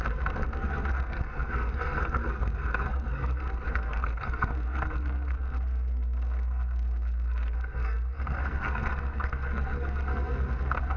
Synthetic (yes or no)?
yes